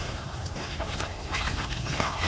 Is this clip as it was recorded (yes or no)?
no